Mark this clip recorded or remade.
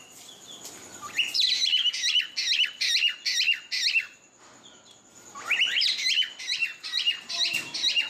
recorded